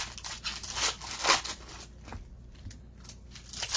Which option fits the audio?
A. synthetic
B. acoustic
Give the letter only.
B